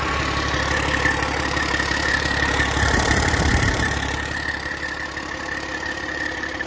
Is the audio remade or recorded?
remade